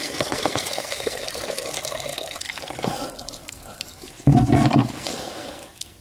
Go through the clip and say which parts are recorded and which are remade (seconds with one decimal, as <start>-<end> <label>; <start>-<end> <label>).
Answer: 0.0-6.0 remade